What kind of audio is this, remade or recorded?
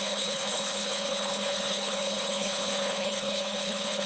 remade